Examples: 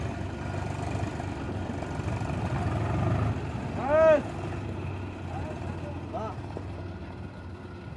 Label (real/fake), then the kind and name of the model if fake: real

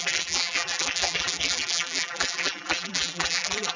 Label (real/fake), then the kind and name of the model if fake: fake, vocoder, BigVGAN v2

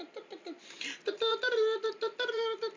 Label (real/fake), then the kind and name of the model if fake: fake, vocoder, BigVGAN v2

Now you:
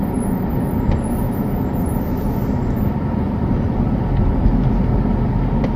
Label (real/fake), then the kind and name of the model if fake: fake, vocoder, BigVGAN v2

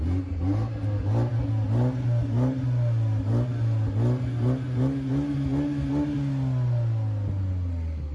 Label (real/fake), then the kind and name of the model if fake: real